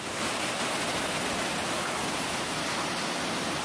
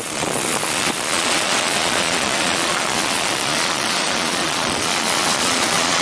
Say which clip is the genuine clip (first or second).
first